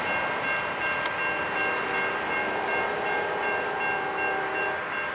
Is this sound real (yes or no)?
yes